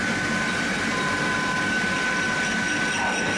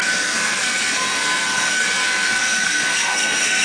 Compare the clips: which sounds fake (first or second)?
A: second